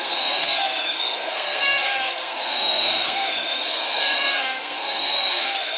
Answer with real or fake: fake